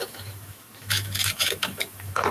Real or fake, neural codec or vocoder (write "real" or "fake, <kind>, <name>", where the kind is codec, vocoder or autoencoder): fake, autoencoder, DAC-VAE